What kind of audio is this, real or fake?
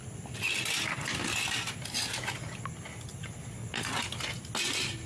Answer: real